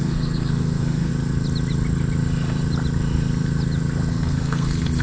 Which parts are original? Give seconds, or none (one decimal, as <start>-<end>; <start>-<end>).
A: 1.1-4.1